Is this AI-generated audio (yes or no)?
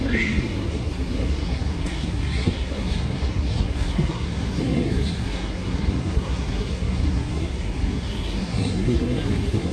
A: yes